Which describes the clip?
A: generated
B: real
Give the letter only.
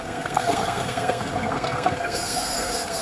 A